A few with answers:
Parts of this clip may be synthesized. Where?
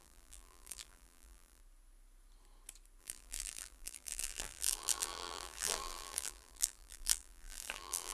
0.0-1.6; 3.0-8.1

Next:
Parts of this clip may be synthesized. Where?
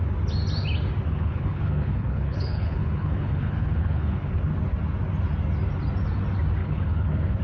1.1-4.4; 6.6-7.4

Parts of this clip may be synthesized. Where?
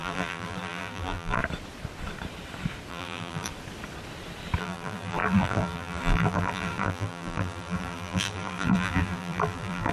0.0-1.4; 2.9-3.5; 4.6-9.9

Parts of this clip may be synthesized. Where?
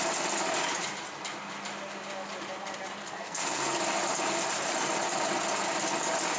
3.0-3.8